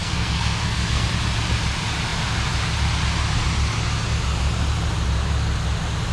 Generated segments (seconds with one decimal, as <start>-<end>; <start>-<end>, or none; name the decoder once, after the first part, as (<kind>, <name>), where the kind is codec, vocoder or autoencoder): 0.0-1.1 (codec, SNAC)